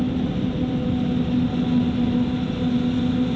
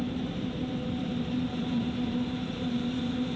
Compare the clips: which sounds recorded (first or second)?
first